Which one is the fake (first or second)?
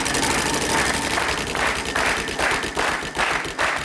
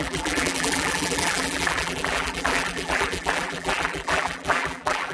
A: second